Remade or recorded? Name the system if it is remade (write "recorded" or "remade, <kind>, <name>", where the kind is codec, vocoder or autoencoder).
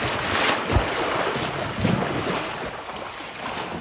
recorded